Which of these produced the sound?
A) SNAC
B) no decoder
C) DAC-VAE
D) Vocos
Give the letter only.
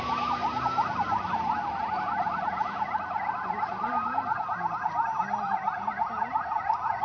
B